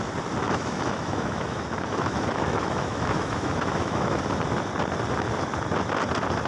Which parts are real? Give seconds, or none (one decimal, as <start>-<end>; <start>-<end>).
0.0-0.4; 4.2-6.5